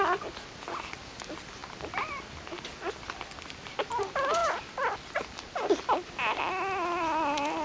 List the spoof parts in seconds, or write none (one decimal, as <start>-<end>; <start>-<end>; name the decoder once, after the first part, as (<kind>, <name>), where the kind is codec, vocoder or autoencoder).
none